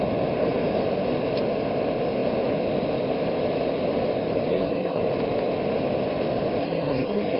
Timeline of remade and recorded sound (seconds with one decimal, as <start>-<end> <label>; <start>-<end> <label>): 0.0-4.5 recorded; 4.5-5.0 remade; 5.0-6.6 recorded; 6.6-7.4 remade